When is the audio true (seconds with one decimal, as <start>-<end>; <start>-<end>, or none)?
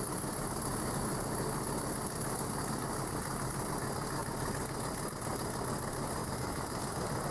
0.0-6.2; 6.8-7.3